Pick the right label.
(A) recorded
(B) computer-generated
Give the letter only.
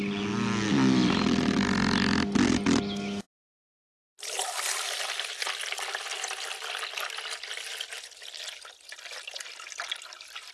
A